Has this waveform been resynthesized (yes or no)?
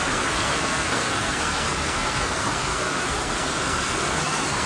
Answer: yes